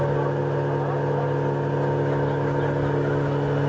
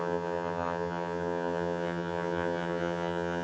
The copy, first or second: second